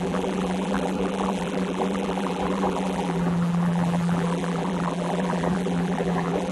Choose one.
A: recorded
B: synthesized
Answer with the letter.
B